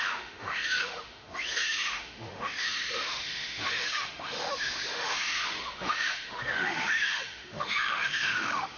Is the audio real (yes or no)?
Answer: no